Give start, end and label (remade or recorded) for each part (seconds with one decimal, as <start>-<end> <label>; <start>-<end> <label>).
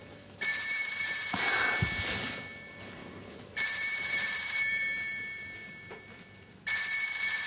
0.0-0.5 recorded; 0.5-1.6 remade; 1.6-3.0 recorded; 3.0-6.1 remade; 6.1-7.5 recorded